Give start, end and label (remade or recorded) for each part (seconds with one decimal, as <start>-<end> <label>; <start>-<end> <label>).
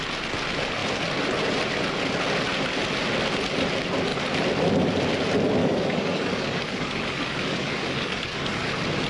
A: 0.0-5.6 recorded; 5.6-8.7 remade; 8.7-9.1 recorded